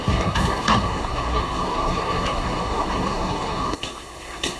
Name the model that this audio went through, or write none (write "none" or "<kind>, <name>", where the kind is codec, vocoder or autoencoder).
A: codec, SNAC